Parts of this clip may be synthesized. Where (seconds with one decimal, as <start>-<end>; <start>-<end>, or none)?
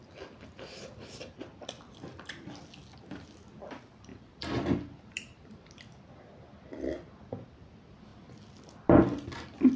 4.1-5.7